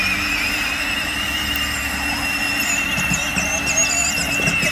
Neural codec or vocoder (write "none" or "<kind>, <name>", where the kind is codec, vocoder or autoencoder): none